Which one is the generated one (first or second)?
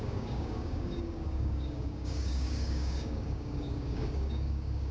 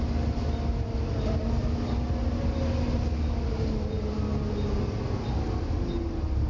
first